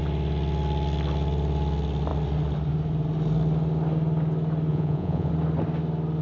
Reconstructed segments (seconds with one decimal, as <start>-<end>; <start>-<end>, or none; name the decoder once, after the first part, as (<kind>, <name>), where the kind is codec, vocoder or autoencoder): 4.7-5.3 (vocoder, Vocos)